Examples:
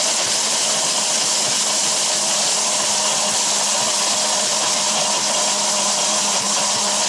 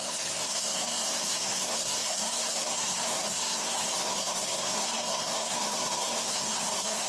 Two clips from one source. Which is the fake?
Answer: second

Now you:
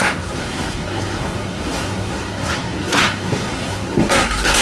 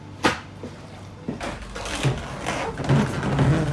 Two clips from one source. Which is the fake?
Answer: first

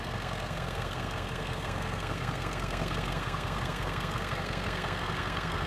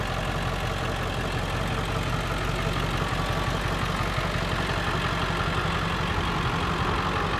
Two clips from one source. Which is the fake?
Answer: first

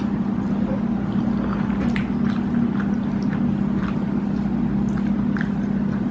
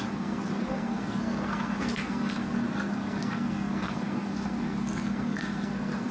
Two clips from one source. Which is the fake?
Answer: second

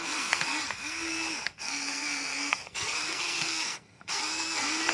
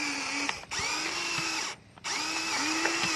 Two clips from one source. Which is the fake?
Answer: first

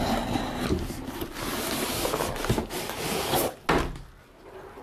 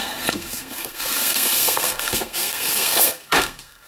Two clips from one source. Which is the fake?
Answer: second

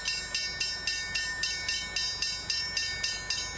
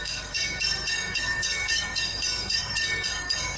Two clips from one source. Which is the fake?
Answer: second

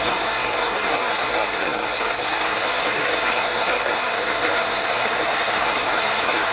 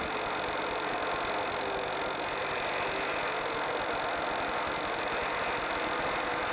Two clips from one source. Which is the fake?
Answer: first